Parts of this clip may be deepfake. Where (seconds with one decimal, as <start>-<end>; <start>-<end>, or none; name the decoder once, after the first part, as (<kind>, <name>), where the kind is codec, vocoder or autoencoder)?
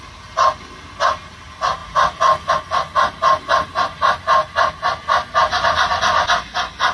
none